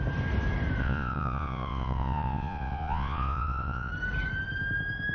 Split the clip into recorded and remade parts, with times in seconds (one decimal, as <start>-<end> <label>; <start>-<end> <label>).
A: 0.0-0.8 recorded; 0.8-3.9 remade; 3.9-5.1 recorded